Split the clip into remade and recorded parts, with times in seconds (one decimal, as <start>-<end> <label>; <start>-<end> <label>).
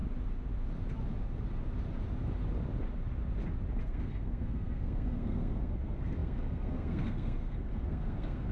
0.0-3.8 recorded; 3.8-8.5 remade